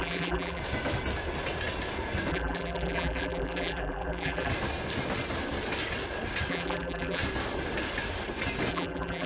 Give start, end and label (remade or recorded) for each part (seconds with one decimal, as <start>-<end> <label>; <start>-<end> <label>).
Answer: 0.0-0.6 remade; 0.6-2.3 recorded; 2.3-4.5 remade; 4.5-6.5 recorded; 6.5-7.2 remade; 7.2-8.7 recorded; 8.7-9.3 remade